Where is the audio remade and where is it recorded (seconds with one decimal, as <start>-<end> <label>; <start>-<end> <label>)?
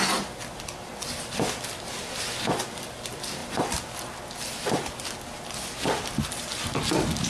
0.0-7.3 recorded